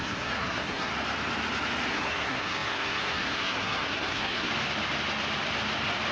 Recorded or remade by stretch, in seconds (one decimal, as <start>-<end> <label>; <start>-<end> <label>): 0.0-0.9 remade; 0.9-1.9 recorded; 1.9-4.5 remade; 4.5-6.1 recorded